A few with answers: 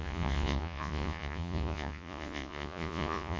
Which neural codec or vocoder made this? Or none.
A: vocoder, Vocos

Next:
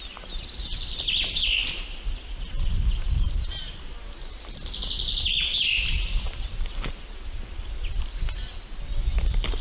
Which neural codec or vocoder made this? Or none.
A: none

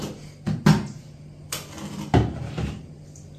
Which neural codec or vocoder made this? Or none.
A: none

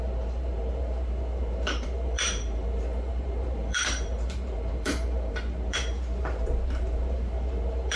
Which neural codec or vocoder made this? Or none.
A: vocoder, BigVGAN v2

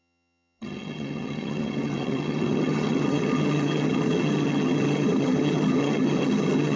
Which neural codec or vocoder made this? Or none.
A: vocoder, HiFi-GAN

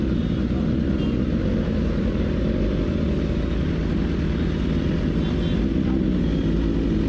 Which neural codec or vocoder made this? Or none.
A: none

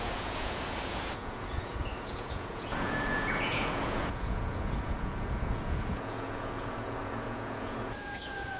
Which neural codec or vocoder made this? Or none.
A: vocoder, Vocos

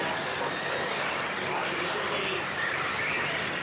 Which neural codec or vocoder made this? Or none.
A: none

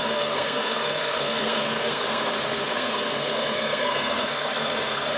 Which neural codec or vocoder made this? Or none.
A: codec, SNAC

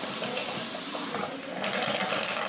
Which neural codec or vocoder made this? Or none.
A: none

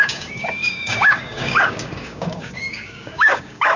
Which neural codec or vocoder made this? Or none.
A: codec, DAC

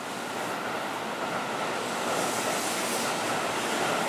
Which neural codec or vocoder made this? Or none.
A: none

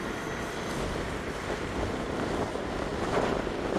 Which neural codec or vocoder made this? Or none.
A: none